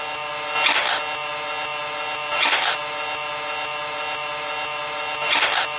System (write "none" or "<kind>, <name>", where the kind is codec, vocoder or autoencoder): none